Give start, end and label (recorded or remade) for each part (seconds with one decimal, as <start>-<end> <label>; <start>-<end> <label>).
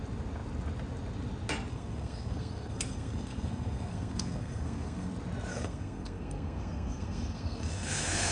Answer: 0.0-1.7 recorded; 1.7-5.1 remade; 5.1-5.5 recorded; 5.5-8.3 remade